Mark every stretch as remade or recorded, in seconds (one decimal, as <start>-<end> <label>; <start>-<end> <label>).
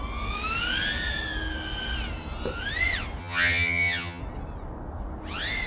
0.0-3.2 recorded; 3.2-4.2 remade; 4.2-5.7 recorded